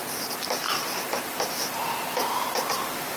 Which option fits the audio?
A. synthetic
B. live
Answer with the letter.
A